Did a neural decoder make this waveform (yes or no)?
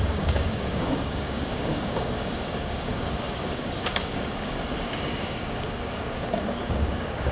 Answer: yes